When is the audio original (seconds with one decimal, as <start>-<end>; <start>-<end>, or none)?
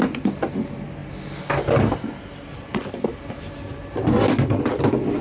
0.0-5.2